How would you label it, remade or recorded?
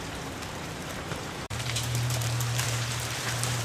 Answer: remade